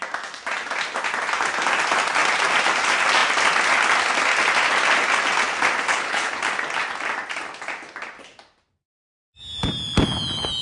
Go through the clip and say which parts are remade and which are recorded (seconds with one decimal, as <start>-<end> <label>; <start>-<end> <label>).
0.0-5.9 recorded; 5.9-6.4 remade; 6.4-10.6 recorded